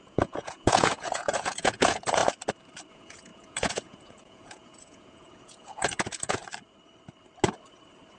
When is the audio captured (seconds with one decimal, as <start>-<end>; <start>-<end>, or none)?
2.2-2.9; 6.4-8.2